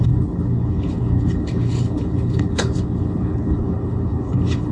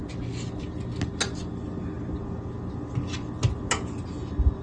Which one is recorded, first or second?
second